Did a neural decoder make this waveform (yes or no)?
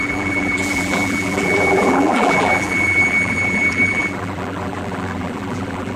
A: yes